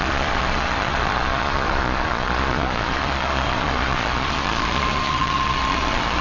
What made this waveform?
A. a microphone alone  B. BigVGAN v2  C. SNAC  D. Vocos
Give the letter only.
D